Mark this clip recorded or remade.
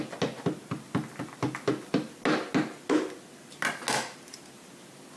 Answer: recorded